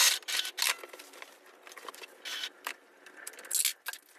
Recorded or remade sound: recorded